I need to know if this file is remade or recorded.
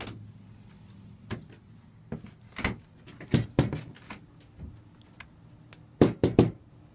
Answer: recorded